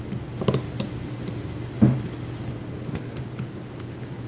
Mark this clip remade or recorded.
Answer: recorded